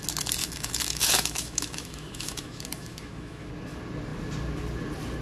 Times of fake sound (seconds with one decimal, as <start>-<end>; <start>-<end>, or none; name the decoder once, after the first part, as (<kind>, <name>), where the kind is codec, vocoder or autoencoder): 0.4-3.5 (autoencoder, DAC-VAE)